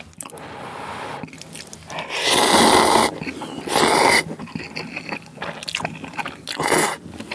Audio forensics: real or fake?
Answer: real